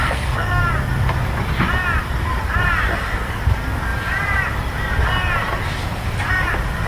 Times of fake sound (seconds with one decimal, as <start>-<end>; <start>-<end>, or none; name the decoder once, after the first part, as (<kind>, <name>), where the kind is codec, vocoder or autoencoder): 0.0-0.6 (codec, SNAC); 2.9-3.4